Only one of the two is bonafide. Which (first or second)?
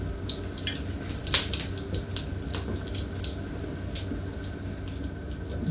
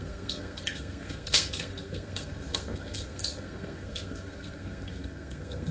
first